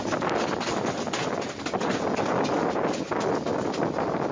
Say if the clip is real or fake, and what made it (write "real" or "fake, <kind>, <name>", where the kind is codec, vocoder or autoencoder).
real